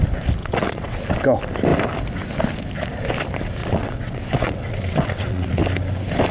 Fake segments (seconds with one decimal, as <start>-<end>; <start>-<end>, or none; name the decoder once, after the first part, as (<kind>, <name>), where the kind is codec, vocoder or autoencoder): 0.4-1.0 (vocoder, WaveNeXt); 3.6-5.6